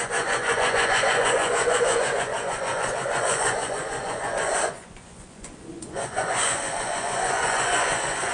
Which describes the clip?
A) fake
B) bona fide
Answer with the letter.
A